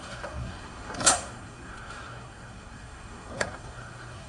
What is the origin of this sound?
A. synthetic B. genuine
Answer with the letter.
A